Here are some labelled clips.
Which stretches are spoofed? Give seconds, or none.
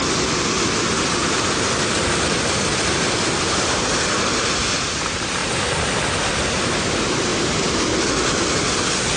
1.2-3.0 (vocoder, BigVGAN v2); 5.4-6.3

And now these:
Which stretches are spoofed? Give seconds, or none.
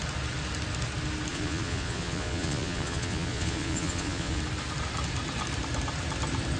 1.3-4.4 (vocoder, Vocos)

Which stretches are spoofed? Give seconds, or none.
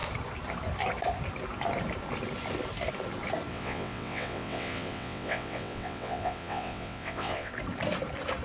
3.5-7.5 (vocoder, WaveNeXt)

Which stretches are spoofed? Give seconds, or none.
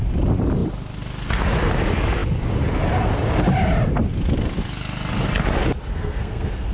5.9-6.7 (codec, SNAC)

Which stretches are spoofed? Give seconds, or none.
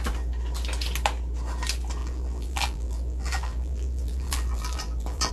2.0-5.3 (vocoder, BigVGAN v2)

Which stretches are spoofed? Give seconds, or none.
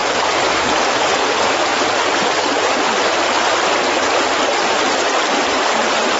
0.0-1.7 (vocoder, BigVGAN v2); 5.4-6.2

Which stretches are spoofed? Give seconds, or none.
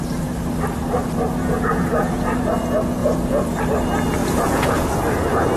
1.4-2.5 (vocoder, Vocos); 3.0-3.6; 4.2-4.9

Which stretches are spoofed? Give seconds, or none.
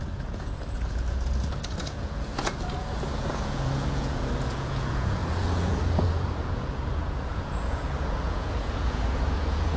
0.0-9.8 (vocoder, Vocos)